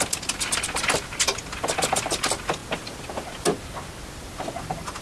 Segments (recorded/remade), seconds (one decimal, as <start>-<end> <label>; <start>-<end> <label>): 0.0-5.0 recorded